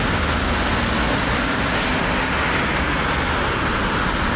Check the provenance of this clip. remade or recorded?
recorded